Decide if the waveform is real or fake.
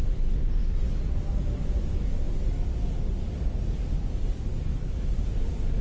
real